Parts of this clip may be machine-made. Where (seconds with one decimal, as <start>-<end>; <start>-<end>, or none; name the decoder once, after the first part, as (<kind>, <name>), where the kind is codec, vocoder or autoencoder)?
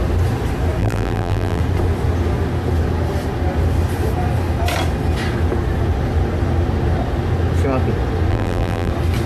0.8-1.6 (vocoder, BigVGAN v2); 8.3-8.9